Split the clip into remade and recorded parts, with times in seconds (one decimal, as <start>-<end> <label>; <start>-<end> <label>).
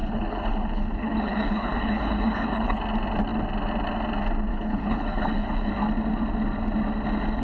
0.0-2.8 remade; 2.8-4.5 recorded; 4.5-5.7 remade; 5.7-7.4 recorded